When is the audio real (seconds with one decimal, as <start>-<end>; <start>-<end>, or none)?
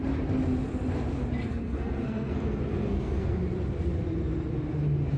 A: 0.0-1.5; 3.4-5.2